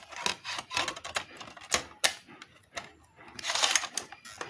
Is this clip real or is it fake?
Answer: real